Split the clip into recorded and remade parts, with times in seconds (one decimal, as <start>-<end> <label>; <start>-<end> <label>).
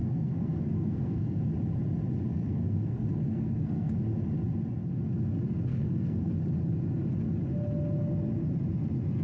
0.0-1.4 remade; 1.4-2.3 recorded; 2.3-3.9 remade; 3.9-5.7 recorded; 5.7-6.3 remade; 6.3-9.2 recorded